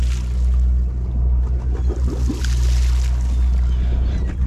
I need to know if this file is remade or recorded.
recorded